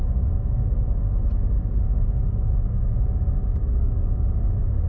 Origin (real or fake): real